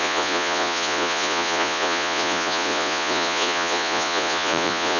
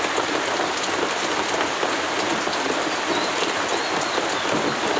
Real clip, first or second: second